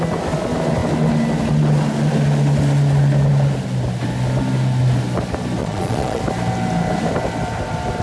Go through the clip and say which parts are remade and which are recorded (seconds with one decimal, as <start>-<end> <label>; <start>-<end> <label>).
0.0-5.6 recorded; 5.6-6.2 remade; 6.2-8.0 recorded